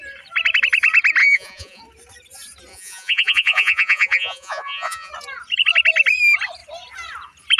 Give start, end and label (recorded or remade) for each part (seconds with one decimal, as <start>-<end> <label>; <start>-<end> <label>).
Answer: 0.0-1.2 recorded; 1.2-1.8 remade; 1.8-2.7 recorded; 2.7-5.1 remade; 5.1-7.6 recorded